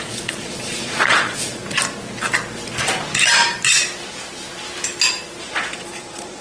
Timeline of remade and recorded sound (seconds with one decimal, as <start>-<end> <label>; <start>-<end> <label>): 0.0-1.6 remade; 1.6-5.4 recorded; 5.4-6.4 remade